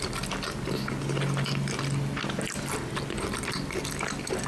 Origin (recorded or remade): recorded